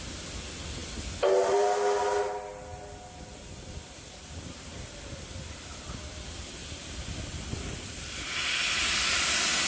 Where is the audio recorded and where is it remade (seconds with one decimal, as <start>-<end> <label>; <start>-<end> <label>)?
0.0-9.7 recorded

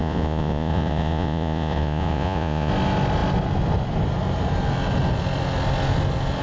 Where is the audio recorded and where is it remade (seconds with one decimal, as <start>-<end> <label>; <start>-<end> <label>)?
0.0-2.7 remade; 2.7-6.4 recorded